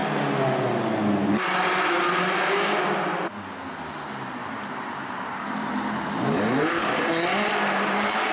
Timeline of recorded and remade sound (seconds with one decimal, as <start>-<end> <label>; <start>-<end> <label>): 0.0-4.4 recorded; 4.4-7.5 remade; 7.5-8.3 recorded